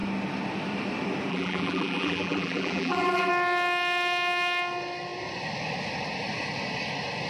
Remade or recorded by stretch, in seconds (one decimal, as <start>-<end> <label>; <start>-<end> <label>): 0.0-1.3 recorded; 1.3-3.3 remade; 3.3-7.3 recorded